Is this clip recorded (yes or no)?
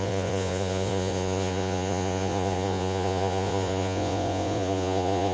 no